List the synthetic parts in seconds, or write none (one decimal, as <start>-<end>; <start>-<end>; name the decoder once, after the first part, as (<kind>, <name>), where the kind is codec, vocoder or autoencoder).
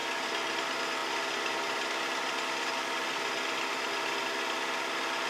none